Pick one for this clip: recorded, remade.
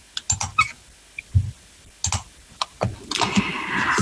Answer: recorded